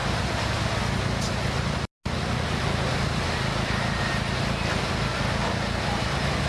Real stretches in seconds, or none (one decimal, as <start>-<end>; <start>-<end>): 0.0-6.5